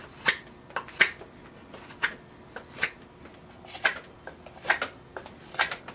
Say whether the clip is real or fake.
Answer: real